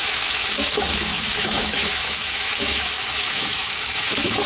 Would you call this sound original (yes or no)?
no